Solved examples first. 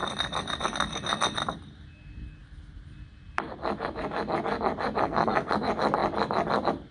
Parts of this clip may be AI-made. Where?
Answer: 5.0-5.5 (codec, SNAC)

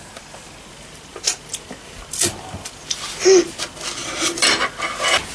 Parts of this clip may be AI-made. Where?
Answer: none

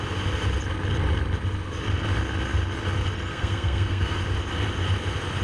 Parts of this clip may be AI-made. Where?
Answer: 3.3-4.2 (codec, SNAC)

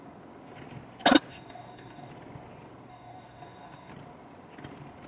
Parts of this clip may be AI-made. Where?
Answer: 1.3-2.1 (codec, DAC); 2.9-3.9